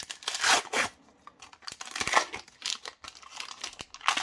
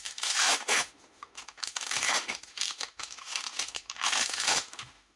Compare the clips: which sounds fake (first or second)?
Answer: second